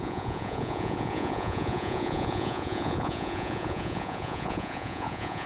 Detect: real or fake fake